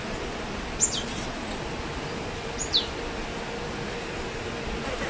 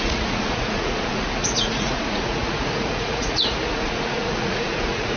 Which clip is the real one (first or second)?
first